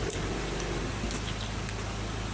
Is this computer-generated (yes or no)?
no